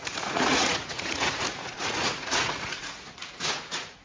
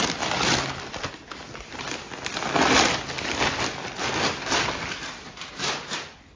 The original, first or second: second